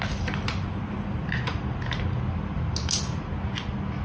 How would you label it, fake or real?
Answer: real